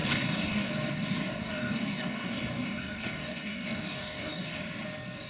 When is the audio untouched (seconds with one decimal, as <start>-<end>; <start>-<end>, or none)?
0.7-1.4; 4.6-5.3